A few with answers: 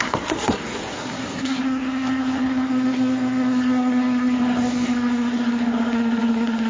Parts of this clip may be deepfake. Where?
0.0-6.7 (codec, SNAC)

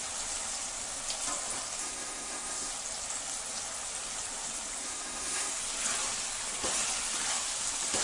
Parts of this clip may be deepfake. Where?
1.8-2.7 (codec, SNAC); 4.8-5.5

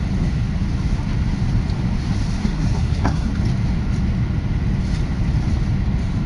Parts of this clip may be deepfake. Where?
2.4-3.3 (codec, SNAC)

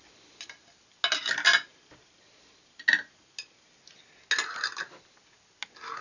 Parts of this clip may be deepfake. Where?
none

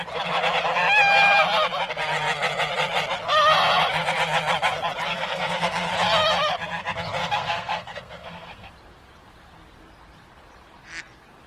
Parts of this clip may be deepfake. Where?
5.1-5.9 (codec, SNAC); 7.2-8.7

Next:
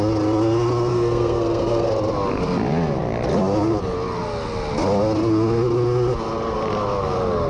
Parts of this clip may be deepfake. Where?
0.9-1.9 (codec, SNAC)

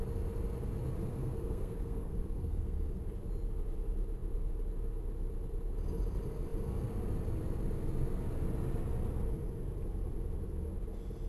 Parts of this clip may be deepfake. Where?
1.1-3.0 (codec, SNAC)